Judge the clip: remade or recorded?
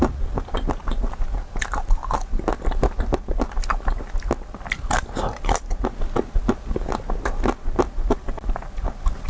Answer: recorded